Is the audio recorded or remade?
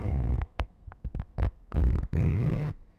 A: remade